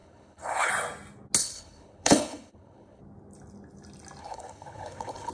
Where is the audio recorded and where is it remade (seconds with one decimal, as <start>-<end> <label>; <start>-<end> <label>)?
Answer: 0.0-0.7 remade; 0.7-1.4 recorded; 1.4-3.0 remade; 3.0-4.2 recorded; 4.2-5.3 remade